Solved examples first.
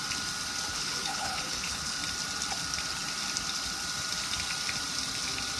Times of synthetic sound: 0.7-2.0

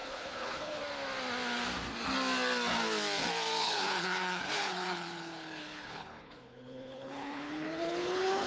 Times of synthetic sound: 0.0-0.8; 3.6-8.5

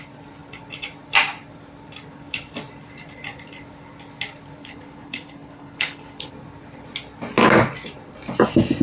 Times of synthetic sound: 4.6-6.3

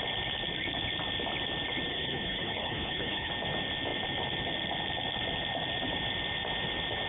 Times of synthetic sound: 1.9-3.3

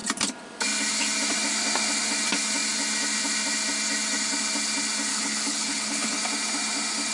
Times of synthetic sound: 5.1-6.2

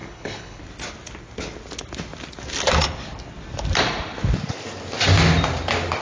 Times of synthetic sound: 0.0-0.6

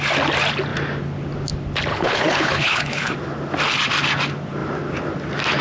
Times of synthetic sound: 1.9-3.1